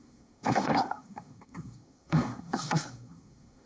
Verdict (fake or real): fake